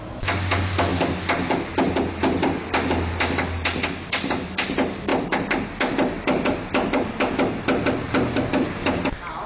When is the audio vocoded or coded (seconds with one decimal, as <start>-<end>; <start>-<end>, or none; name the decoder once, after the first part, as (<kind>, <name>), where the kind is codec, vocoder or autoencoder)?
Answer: none